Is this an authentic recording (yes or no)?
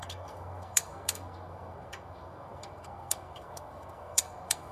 no